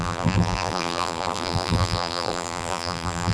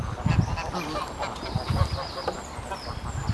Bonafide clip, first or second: second